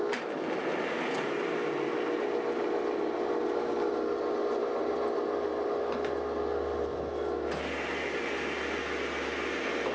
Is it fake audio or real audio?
real